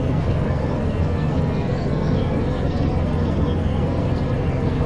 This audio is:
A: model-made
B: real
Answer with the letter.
A